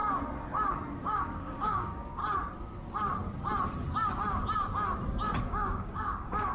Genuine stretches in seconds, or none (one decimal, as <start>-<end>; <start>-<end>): 0.0-1.2; 2.2-5.4